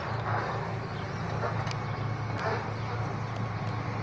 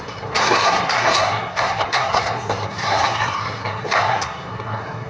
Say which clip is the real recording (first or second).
first